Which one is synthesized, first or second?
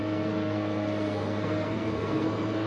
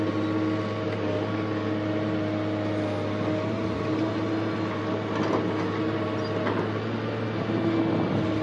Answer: first